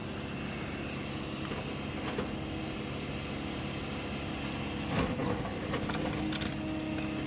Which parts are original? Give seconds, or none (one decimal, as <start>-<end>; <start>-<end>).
0.0-7.3